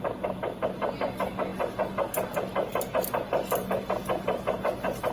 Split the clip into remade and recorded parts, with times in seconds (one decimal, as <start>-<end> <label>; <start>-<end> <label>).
0.0-5.1 recorded